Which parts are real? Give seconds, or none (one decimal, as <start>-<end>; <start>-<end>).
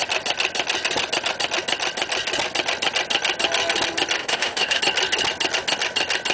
0.0-4.2; 4.8-6.3